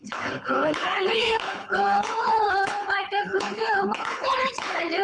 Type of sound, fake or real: fake